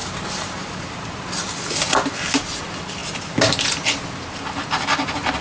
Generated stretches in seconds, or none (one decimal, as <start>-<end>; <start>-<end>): 0.0-1.4